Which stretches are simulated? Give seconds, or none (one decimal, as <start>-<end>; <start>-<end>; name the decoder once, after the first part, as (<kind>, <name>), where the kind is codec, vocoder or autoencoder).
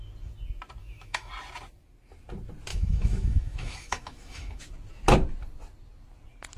0.8-1.3 (autoencoder, DAC-VAE); 2.7-4.6